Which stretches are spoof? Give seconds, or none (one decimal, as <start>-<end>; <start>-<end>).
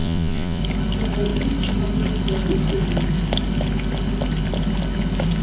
0.0-0.6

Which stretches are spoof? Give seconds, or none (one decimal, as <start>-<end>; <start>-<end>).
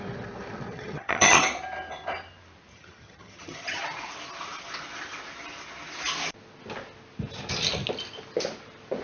0.7-1.4; 2.7-3.8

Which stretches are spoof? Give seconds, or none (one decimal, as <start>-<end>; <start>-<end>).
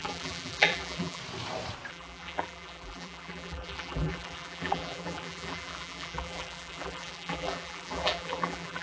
0.0-1.2; 1.9-8.8